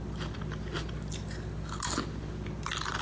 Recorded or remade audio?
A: recorded